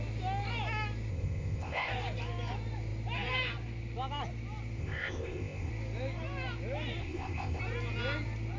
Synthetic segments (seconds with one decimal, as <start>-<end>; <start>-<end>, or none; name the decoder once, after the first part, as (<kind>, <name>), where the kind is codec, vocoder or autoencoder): 1.1-1.9 (codec, ZipCodec); 4.8-5.7; 7.0-7.6